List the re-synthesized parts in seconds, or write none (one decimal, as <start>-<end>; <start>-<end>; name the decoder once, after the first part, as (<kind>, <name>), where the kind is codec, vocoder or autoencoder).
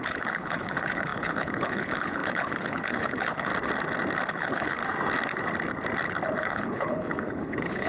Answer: 0.0-3.5 (codec, HILCodec); 4.3-4.8; 6.4-7.9